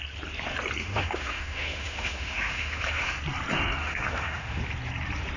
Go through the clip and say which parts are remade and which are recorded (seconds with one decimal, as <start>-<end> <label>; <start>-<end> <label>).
0.0-0.8 recorded; 0.8-3.2 remade; 3.2-3.8 recorded; 3.8-4.6 remade; 4.6-5.4 recorded